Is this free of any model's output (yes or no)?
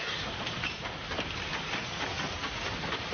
yes